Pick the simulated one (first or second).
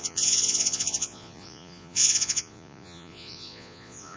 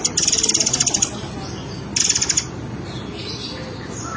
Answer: first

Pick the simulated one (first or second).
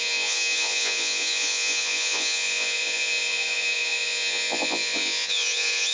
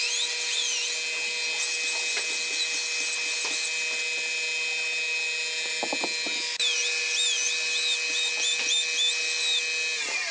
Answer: first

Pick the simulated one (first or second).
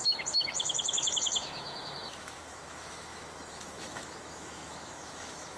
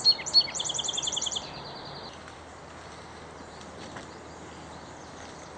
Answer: first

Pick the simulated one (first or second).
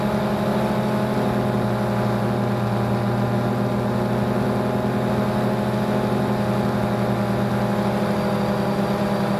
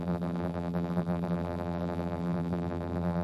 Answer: second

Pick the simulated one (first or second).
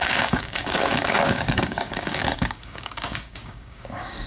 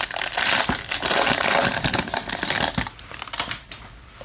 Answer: first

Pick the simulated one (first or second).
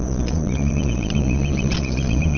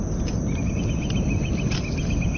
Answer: first